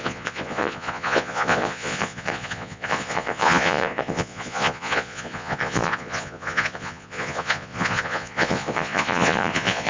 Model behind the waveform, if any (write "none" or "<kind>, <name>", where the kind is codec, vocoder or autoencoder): vocoder, Vocos